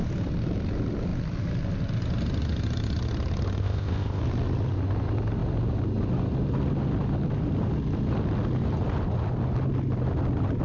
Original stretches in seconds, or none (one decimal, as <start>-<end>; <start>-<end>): 0.0-3.6; 4.2-10.6